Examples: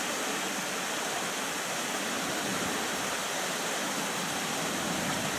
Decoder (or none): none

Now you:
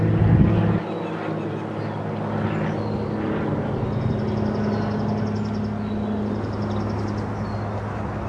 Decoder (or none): none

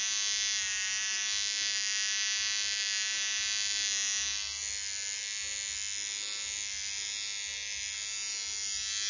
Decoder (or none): none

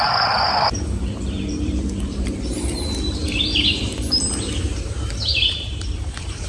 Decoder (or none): vocoder, BigVGAN v2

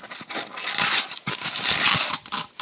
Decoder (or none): none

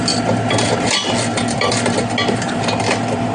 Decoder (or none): none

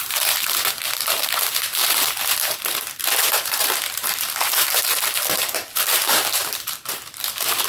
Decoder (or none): vocoder, BigVGAN v2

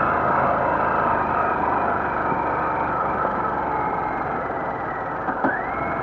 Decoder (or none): none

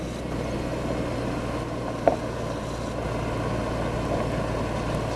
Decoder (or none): none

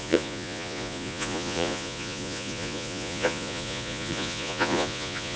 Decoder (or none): vocoder, Vocos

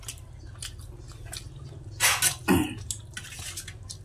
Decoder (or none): none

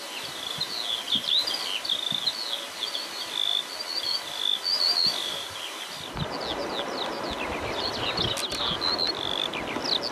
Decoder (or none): none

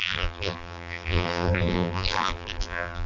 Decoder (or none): vocoder, BigVGAN v2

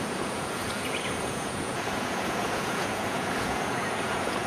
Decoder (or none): vocoder, Vocos